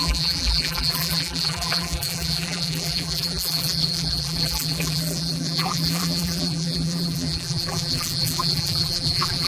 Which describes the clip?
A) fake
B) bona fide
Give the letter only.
A